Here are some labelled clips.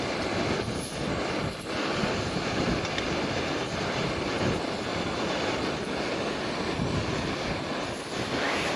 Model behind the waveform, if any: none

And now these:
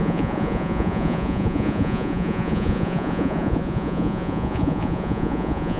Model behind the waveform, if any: vocoder, Vocos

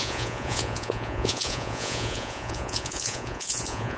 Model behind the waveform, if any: vocoder, Vocos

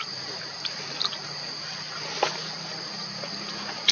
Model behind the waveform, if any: none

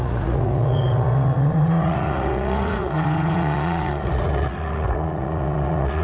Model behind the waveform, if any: vocoder, Vocos